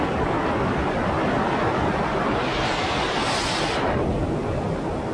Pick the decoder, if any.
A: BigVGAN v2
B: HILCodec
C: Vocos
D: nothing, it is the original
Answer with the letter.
D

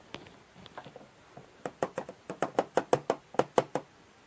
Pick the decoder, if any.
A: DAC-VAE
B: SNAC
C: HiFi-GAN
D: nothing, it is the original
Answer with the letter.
D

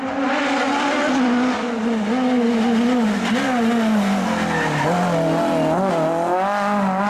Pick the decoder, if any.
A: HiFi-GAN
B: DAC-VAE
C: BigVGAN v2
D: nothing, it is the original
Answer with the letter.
D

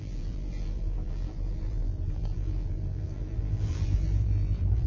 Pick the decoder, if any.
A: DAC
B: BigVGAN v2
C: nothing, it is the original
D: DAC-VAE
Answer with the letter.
B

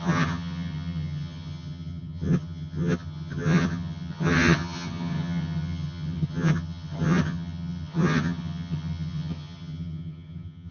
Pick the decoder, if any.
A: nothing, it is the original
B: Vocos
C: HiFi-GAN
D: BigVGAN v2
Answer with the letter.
C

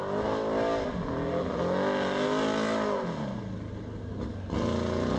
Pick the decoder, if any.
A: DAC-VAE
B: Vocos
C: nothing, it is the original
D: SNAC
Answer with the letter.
C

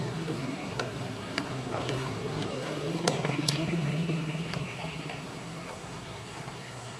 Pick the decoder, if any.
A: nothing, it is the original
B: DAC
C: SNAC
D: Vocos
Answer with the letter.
C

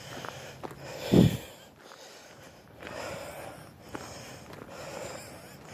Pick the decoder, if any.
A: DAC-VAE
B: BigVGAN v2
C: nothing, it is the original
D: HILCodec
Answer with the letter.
C